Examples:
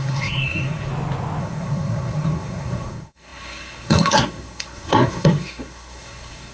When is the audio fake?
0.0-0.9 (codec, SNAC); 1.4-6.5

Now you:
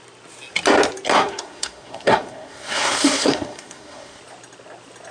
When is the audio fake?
1.1-4.2 (codec, SNAC)